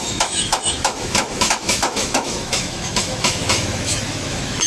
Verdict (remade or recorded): remade